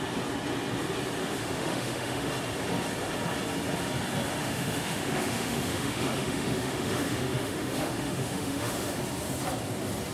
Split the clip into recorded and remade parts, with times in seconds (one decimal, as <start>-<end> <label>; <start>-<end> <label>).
0.0-1.2 recorded; 1.2-2.3 remade; 2.3-4.4 recorded; 4.4-9.0 remade; 9.0-10.1 recorded